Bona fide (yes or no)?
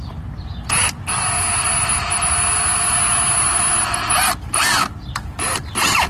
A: yes